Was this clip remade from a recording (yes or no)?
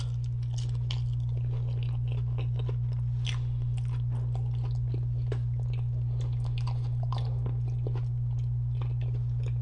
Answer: no